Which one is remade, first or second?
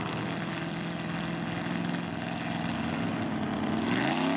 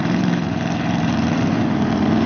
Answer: second